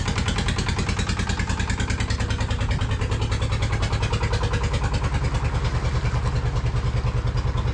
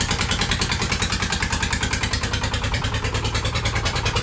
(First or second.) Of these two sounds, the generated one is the second